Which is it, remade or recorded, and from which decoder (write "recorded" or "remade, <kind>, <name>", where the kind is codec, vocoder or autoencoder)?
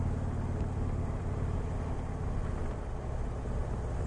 recorded